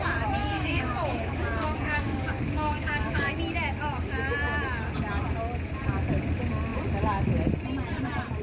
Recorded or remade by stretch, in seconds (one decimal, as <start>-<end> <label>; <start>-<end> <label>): 0.0-0.4 recorded; 0.4-3.3 remade; 3.3-8.4 recorded